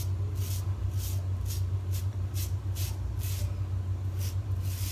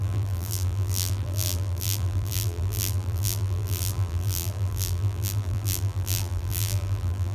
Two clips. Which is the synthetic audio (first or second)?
second